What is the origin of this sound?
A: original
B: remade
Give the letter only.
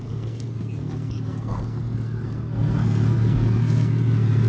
B